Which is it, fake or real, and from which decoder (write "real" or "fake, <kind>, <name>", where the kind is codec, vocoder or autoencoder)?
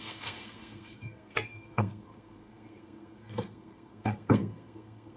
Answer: fake, codec, SNAC